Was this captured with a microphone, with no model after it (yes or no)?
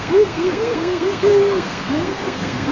no